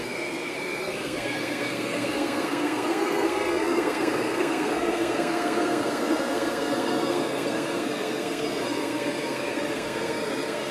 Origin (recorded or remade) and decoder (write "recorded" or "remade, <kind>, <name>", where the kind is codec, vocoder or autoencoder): remade, codec, SNAC